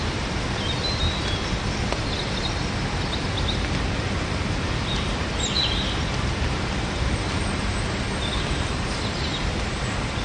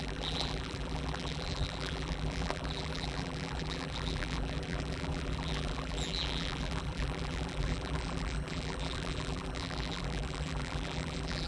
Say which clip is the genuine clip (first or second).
first